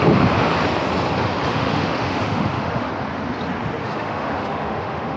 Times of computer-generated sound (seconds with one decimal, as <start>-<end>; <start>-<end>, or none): 1.5-2.9; 3.8-5.2